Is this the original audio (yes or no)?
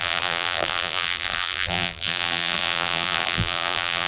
no